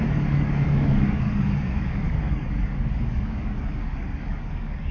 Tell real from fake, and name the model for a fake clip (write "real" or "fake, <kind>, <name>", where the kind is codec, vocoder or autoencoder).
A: fake, codec, DAC